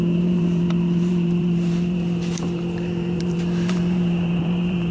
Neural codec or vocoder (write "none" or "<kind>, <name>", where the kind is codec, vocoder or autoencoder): vocoder, BigVGAN v2